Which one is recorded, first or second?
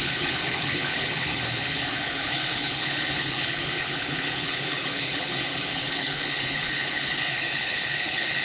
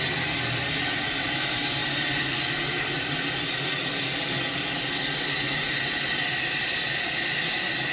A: second